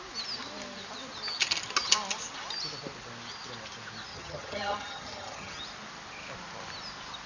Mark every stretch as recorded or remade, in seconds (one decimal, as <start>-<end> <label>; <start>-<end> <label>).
0.0-4.1 recorded; 4.1-5.6 remade; 5.6-7.3 recorded